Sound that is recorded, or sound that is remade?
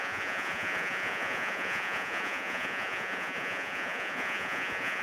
remade